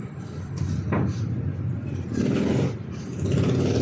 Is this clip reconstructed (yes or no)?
no